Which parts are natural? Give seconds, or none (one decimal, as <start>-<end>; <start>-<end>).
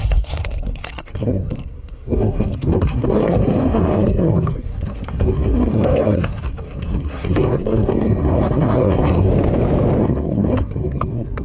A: 9.3-10.0